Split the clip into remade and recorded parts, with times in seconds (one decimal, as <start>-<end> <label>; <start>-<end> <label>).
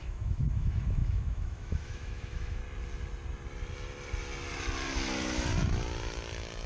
0.0-2.6 remade; 2.6-6.7 recorded